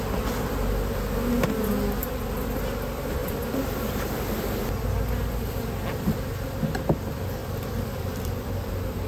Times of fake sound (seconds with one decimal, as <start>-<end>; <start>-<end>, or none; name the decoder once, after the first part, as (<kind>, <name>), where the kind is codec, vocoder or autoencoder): 2.0-2.6 (vocoder, BigVGAN v2); 3.2-3.9; 7.4-8.7